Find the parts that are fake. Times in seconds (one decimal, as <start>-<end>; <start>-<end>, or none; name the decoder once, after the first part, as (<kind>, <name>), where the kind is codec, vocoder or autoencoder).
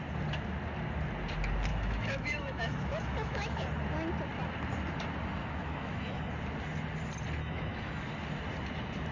1.7-3.6 (autoencoder, DAC-VAE); 5.4-6.3; 7.4-8.0